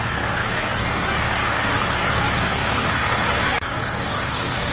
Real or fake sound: fake